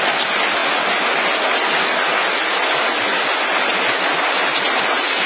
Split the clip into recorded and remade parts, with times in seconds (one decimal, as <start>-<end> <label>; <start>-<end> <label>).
0.0-5.3 recorded